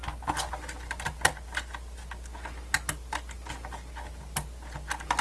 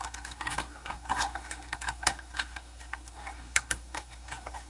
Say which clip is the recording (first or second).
first